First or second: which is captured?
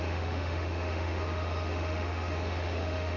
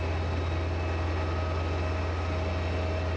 second